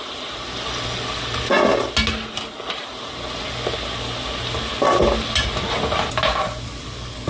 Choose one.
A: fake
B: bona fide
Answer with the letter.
B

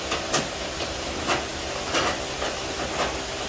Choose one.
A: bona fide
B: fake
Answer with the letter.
A